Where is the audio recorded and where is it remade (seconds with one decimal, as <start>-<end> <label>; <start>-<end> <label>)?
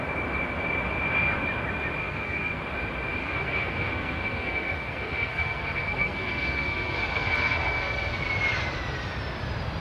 0.0-2.0 recorded; 2.0-2.6 remade; 2.6-3.2 recorded; 3.2-8.3 remade; 8.3-9.8 recorded